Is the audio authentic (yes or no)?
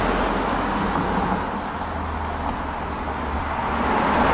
yes